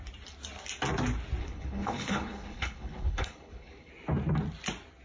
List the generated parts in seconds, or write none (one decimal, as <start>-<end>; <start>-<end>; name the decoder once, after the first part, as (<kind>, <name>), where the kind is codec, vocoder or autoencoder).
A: 1.4-3.9 (codec, HILCodec)